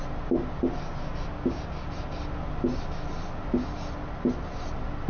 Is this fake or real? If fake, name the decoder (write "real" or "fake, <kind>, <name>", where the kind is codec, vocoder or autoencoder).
real